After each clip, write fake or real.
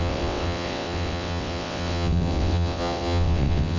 fake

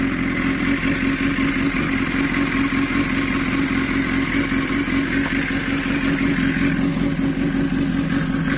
real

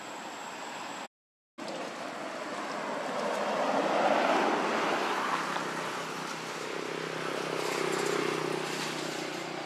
real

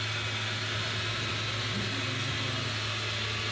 real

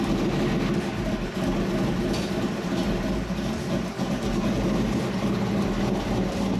real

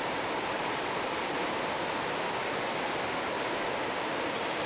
real